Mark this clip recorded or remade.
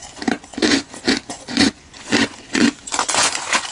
remade